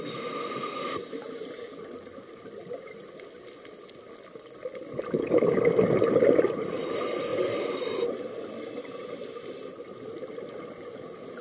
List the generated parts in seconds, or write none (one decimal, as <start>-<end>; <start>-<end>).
none